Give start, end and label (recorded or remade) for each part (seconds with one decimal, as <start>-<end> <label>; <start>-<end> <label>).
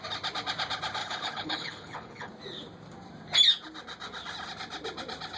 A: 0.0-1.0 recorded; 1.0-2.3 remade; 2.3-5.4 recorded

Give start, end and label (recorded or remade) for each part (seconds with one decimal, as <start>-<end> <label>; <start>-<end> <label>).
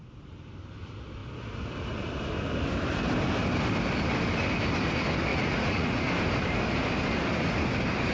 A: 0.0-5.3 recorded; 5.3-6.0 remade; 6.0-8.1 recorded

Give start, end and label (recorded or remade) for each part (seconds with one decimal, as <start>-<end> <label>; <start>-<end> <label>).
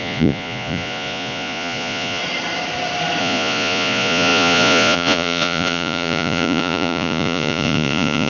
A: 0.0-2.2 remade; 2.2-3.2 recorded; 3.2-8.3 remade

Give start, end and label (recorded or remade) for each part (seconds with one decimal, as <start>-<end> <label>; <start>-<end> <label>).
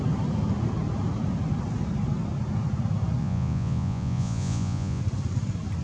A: 0.0-3.2 recorded; 3.2-5.0 remade; 5.0-5.8 recorded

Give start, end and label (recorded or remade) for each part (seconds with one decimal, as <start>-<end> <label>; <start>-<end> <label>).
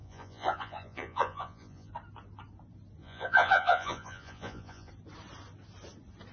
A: 0.0-1.9 remade; 1.9-3.0 recorded; 3.0-4.9 remade; 4.9-6.3 recorded